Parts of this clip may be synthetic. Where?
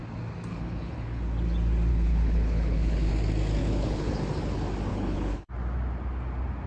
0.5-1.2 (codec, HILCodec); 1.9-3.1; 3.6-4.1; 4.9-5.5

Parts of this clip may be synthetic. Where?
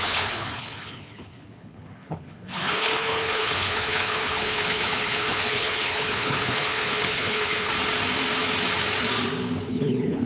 0.0-7.7 (codec, HILCodec); 9.7-10.3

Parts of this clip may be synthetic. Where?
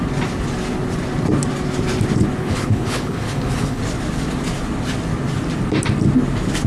2.4-3.8 (codec, HILCodec)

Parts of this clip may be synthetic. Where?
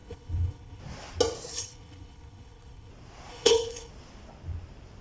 0.0-0.8 (codec, HILCodec); 1.5-2.9; 3.3-3.9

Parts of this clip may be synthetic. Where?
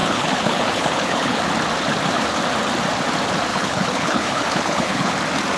0.0-1.4 (codec, HILCodec); 3.5-5.1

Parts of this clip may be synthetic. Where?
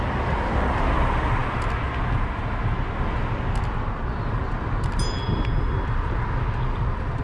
none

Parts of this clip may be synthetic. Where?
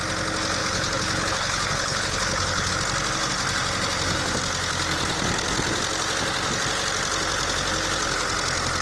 0.6-2.7 (codec, HILCodec)